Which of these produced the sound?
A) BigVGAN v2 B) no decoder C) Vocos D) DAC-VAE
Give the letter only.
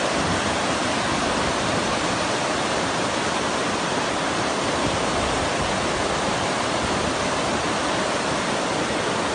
A